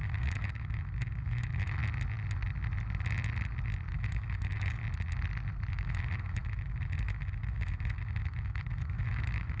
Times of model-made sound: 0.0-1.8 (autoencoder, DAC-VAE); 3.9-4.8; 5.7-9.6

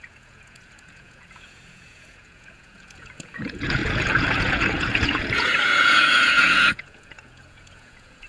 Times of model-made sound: 0.0-8.3 (vocoder, Vocos)

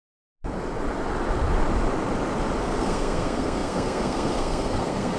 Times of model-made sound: 2.6-5.2 (codec, SNAC)